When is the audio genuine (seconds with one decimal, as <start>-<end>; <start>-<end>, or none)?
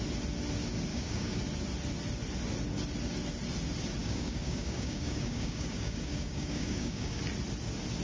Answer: 0.0-0.9; 1.4-4.0; 7.2-8.0